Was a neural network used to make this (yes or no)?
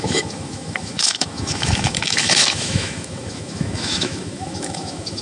yes